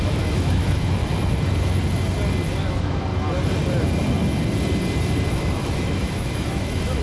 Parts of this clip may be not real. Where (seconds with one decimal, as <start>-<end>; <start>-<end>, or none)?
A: 0.0-1.0; 2.6-3.1; 5.3-7.0